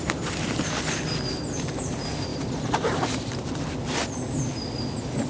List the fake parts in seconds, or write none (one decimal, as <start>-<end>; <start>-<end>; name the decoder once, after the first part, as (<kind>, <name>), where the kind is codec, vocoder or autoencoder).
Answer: 2.3-3.0 (vocoder, BigVGAN v2)